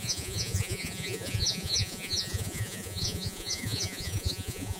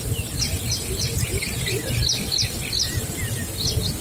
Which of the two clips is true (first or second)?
second